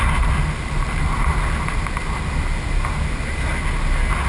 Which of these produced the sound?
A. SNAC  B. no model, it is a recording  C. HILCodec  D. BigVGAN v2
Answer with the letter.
B